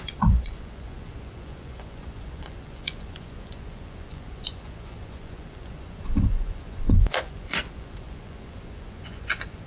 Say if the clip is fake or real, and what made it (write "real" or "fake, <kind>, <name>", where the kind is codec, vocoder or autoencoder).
fake, vocoder, Vocos